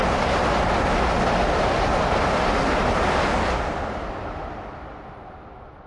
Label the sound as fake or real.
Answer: real